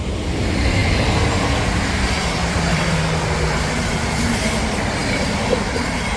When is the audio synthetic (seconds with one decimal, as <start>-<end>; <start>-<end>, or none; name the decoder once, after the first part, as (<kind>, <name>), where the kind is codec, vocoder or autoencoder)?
2.4-3.0 (vocoder, BigVGAN v2); 5.0-5.7